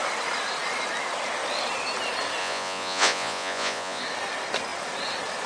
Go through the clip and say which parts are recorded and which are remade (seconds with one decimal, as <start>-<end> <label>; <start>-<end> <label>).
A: 0.0-2.4 recorded; 2.4-4.0 remade; 4.0-5.5 recorded